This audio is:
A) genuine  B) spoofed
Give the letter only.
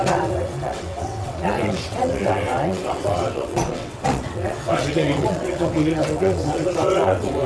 B